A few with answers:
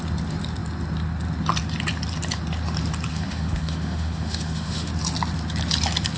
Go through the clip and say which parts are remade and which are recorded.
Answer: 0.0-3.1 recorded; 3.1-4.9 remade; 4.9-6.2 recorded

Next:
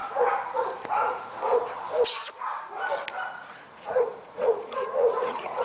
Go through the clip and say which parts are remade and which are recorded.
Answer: 0.0-3.3 recorded; 3.3-5.6 remade

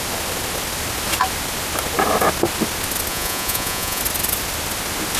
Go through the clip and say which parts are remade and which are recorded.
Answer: 0.0-3.1 recorded; 3.1-4.0 remade; 4.0-5.2 recorded

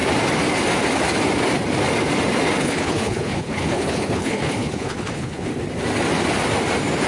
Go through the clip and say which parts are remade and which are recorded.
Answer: 0.0-2.6 recorded; 2.6-5.5 remade; 5.5-7.1 recorded

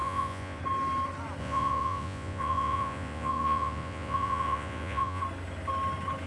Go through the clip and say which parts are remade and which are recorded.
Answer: 0.0-0.6 remade; 0.6-1.4 recorded; 1.4-5.2 remade; 5.2-6.3 recorded

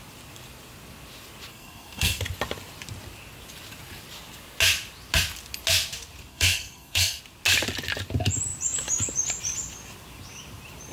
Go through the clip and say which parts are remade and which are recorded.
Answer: 0.0-1.5 recorded; 1.5-2.2 remade; 2.2-6.3 recorded; 6.3-7.2 remade; 7.2-10.9 recorded

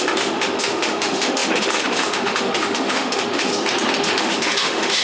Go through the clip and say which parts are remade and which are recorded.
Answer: 0.0-3.5 remade; 3.5-4.0 recorded; 4.0-5.0 remade